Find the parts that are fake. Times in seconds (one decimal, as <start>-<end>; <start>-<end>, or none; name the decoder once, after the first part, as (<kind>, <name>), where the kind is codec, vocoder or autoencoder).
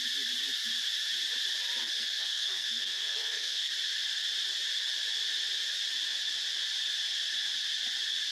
1.8-3.7 (codec, SNAC)